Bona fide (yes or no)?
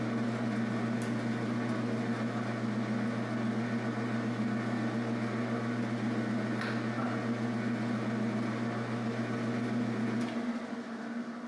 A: yes